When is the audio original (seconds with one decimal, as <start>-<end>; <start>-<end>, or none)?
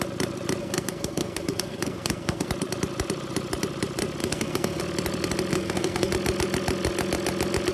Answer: 0.0-0.6; 2.5-4.2; 4.8-5.5; 6.1-7.7